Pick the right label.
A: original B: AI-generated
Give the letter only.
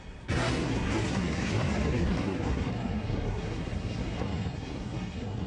B